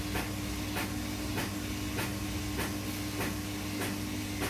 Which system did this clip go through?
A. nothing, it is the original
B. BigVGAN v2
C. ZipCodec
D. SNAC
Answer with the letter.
A